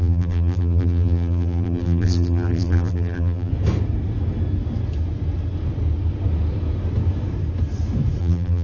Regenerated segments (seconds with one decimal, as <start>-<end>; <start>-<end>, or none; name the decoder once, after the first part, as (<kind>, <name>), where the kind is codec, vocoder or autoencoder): 0.0-3.5 (vocoder, BigVGAN v2); 8.2-8.6